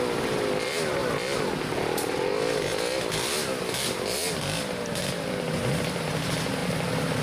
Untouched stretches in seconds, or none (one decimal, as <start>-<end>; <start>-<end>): 0.0-7.2